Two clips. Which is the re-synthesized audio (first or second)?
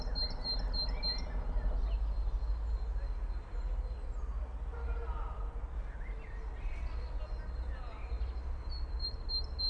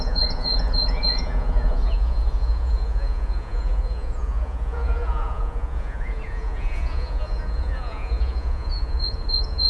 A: second